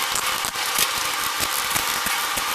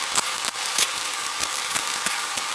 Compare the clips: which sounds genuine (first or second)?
first